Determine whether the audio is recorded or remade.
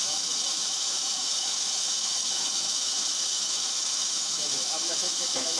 remade